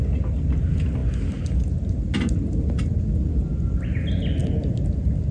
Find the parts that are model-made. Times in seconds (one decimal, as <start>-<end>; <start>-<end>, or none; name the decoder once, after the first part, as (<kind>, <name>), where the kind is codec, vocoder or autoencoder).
none